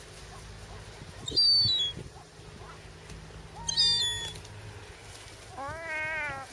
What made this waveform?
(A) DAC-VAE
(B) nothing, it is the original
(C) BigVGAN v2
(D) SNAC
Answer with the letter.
B